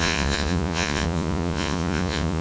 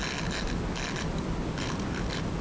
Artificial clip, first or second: first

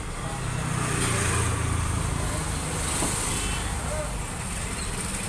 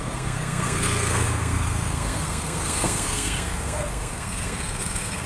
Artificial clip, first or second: second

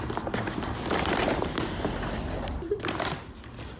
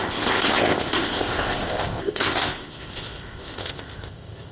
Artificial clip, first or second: second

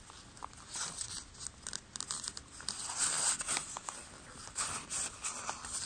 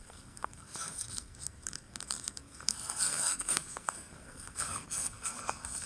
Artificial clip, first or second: second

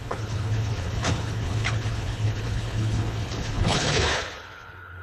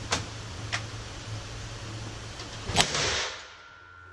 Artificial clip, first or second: first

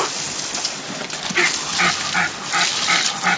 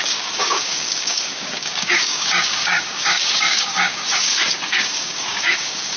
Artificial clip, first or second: second